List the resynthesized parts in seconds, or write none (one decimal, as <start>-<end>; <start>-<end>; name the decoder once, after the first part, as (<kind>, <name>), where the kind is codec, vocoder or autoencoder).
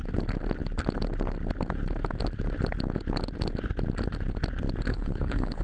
4.9-5.6 (codec, HILCodec)